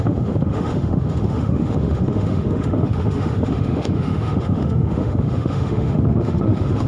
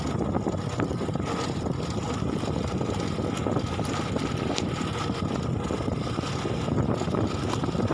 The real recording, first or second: second